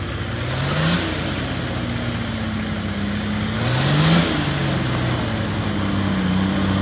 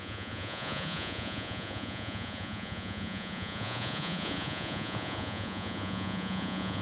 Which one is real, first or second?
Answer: first